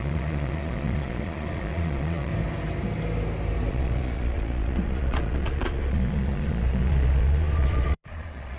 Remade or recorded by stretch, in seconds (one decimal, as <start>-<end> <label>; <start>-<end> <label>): 0.0-2.3 remade; 2.3-3.7 recorded; 3.7-8.6 remade